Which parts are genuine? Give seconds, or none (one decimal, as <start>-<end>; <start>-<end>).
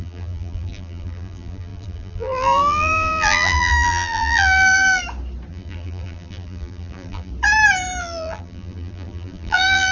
5.0-5.5; 7.3-8.0